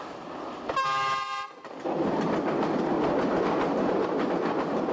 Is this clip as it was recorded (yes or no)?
yes